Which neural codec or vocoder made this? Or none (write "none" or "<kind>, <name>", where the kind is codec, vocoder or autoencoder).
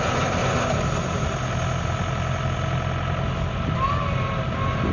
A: none